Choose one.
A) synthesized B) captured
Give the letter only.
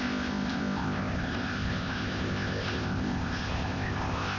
A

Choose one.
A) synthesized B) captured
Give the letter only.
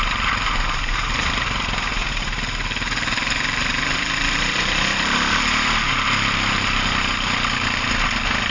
B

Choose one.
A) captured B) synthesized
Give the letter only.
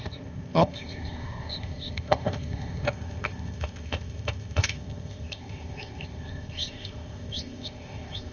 B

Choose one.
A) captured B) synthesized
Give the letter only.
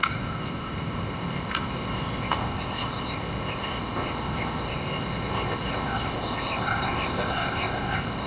B